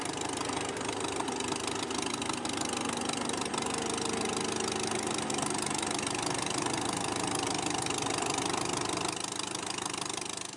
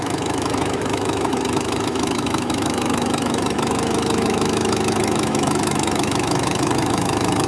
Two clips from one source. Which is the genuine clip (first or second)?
first